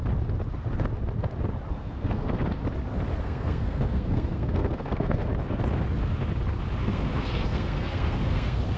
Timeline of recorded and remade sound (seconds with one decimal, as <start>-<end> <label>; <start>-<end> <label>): 0.0-1.7 recorded; 1.7-2.6 remade; 2.6-3.2 recorded; 3.2-5.3 remade; 5.3-6.8 recorded; 6.8-8.8 remade